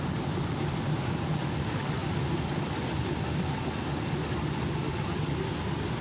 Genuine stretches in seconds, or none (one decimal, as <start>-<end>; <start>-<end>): 0.0-6.0